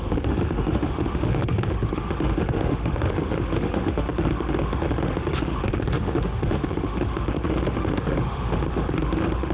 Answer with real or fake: fake